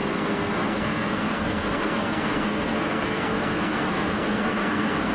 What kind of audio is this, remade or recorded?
remade